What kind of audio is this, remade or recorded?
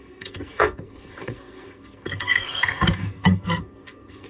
remade